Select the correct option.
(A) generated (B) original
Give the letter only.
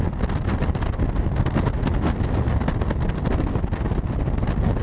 B